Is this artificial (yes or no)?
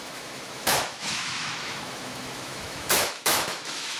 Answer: yes